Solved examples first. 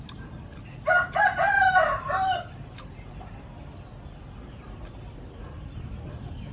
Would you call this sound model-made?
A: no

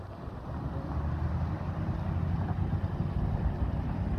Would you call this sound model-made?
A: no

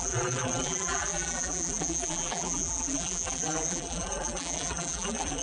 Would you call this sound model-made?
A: yes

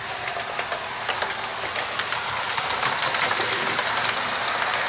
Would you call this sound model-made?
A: no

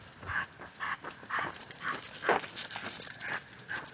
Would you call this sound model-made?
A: no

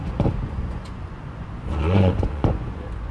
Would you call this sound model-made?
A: yes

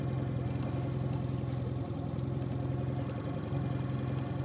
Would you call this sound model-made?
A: no